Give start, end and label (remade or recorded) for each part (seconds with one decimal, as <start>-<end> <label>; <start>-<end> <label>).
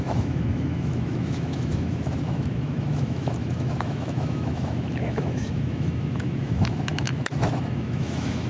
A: 0.0-8.5 remade